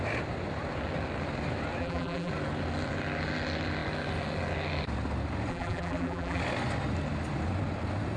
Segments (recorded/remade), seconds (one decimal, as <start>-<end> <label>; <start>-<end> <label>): 0.0-1.8 recorded; 1.8-2.3 remade; 2.3-5.5 recorded; 5.5-6.4 remade; 6.4-8.2 recorded